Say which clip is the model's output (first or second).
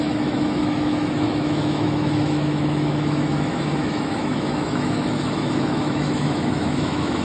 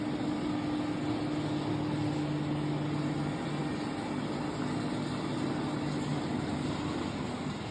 first